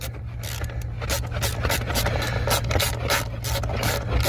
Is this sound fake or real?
real